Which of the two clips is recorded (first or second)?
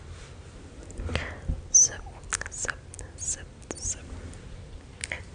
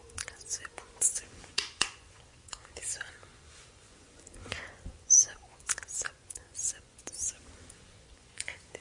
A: first